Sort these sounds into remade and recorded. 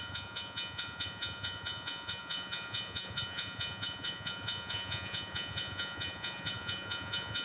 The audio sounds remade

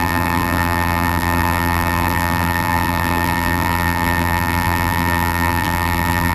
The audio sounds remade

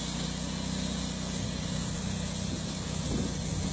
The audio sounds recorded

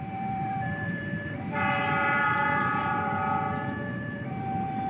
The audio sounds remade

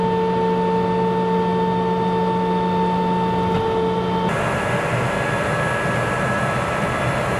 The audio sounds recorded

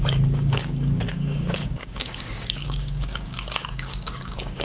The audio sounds remade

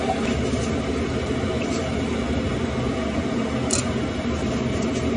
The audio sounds recorded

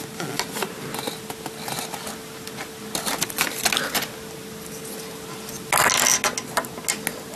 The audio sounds recorded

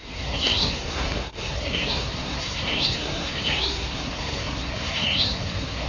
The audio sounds remade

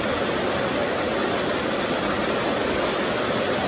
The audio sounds recorded